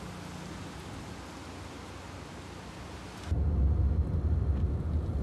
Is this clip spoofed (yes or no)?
no